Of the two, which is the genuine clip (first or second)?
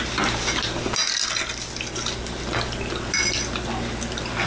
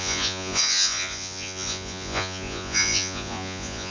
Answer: first